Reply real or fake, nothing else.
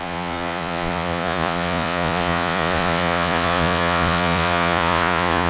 fake